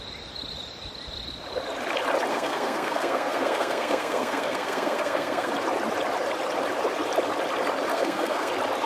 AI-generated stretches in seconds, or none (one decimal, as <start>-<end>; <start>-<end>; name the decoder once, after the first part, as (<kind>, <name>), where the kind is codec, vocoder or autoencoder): 2.3-5.5 (codec, SNAC); 7.9-8.5